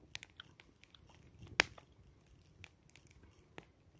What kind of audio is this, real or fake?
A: real